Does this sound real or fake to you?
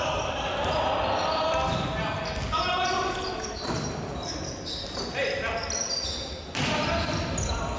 real